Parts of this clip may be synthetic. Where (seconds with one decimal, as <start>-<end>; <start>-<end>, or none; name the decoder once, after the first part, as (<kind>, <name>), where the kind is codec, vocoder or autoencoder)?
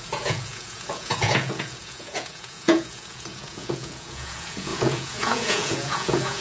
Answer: 0.0-6.4 (vocoder, Vocos)